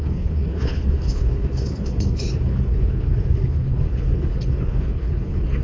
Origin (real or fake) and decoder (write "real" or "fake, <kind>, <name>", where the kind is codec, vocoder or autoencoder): fake, codec, HILCodec